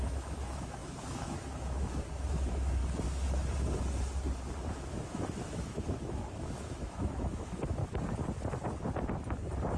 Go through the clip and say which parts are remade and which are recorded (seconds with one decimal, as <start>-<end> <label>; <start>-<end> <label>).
0.0-2.8 remade; 2.8-4.7 recorded; 4.7-7.8 remade; 7.8-9.8 recorded

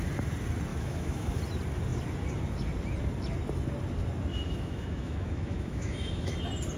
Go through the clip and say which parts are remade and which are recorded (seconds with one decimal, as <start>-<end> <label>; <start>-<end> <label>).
0.0-0.7 recorded; 0.7-1.4 remade; 1.4-4.3 recorded; 4.3-6.3 remade; 6.3-6.8 recorded

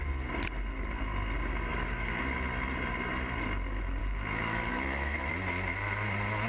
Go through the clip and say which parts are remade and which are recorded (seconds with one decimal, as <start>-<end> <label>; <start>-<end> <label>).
0.0-1.7 recorded; 1.7-2.2 remade; 2.2-4.0 recorded; 4.0-5.3 remade; 5.3-6.5 recorded

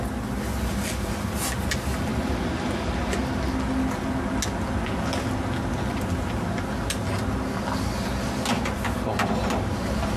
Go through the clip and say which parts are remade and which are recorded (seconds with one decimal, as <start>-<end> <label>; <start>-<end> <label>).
0.0-10.2 recorded

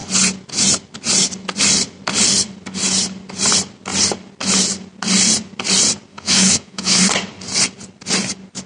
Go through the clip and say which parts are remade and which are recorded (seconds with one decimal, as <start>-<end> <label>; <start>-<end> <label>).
0.0-6.1 recorded; 6.1-7.0 remade; 7.0-8.7 recorded

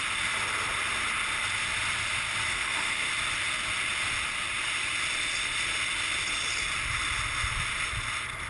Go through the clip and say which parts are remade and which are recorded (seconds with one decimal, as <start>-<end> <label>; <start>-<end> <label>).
0.0-2.5 recorded; 2.5-3.1 remade; 3.1-8.5 recorded

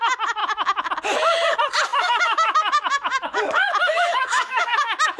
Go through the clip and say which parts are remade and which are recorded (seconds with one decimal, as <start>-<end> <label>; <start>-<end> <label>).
0.0-0.4 recorded; 0.4-0.9 remade; 0.9-1.9 recorded; 1.9-5.2 remade